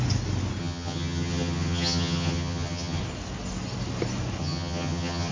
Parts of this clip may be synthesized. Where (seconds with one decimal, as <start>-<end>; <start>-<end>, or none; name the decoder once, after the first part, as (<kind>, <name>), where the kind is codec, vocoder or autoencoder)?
0.6-3.0 (vocoder, HiFi-GAN); 4.4-5.3